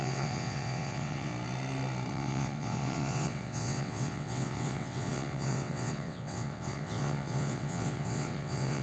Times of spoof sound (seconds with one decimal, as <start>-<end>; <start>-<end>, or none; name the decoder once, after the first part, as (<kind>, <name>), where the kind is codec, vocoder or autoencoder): 0.0-1.3 (vocoder, WaveNeXt); 2.1-8.8